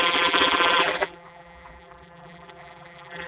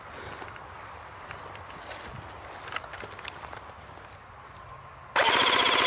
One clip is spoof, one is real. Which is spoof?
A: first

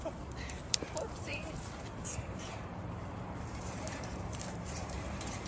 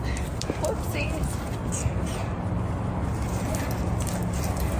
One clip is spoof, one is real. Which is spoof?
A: first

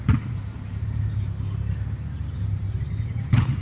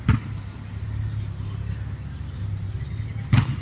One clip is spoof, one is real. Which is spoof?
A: first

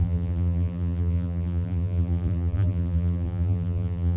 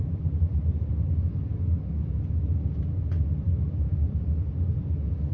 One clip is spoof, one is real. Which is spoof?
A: first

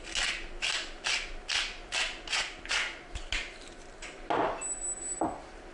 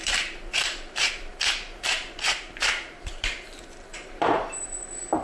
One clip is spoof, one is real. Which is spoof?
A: second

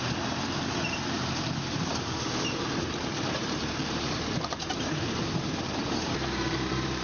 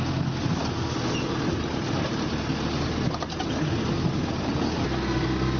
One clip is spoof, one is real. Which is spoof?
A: first